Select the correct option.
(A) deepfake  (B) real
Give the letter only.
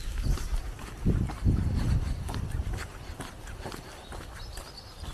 B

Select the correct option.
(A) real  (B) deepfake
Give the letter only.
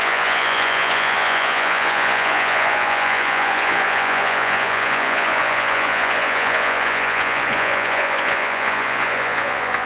B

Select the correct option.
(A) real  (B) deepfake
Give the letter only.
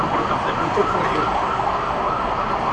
A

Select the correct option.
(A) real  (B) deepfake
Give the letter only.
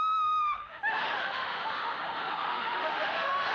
B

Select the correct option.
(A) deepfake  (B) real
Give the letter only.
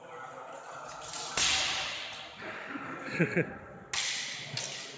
B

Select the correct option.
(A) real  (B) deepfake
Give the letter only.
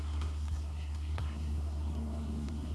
B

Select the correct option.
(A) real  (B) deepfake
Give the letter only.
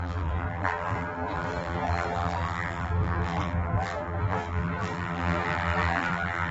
B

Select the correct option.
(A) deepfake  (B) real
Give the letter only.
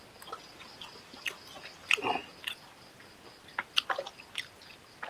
B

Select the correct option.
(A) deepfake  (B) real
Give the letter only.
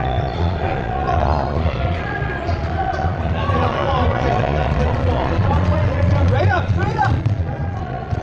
A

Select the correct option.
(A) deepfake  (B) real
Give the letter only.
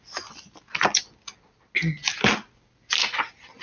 B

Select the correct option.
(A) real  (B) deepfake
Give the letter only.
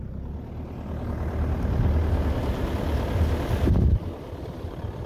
A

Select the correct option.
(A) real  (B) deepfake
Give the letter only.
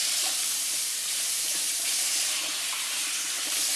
B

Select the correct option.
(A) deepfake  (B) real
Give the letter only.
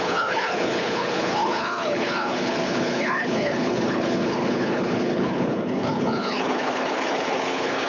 A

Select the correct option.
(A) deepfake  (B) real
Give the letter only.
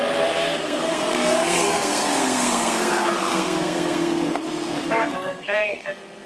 A